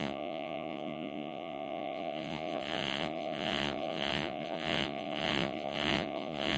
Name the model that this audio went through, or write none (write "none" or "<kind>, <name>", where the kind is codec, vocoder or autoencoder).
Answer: vocoder, Vocos